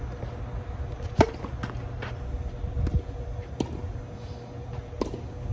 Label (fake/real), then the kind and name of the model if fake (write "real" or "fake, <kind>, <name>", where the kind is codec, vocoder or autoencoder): real